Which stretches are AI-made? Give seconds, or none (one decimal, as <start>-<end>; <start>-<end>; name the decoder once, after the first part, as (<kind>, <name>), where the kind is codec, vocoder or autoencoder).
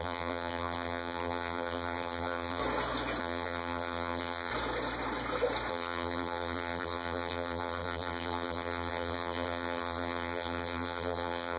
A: 0.0-2.6 (vocoder, BigVGAN v2); 3.2-4.5; 5.7-11.6